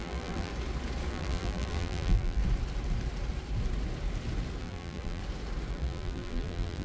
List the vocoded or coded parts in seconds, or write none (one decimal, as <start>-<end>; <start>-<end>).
0.0-0.5; 1.1-2.4; 4.6-5.2; 5.7-6.8